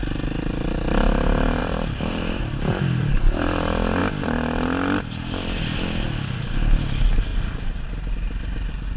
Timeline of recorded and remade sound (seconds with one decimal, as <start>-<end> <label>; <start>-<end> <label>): 0.0-1.6 recorded; 1.6-2.4 remade; 2.4-7.3 recorded; 7.3-7.9 remade; 7.9-9.0 recorded